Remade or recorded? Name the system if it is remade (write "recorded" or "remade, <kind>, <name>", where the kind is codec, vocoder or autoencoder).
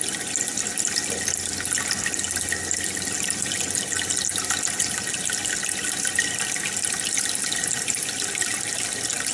recorded